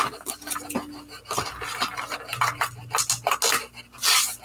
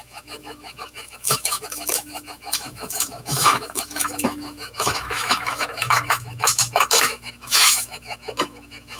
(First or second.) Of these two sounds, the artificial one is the second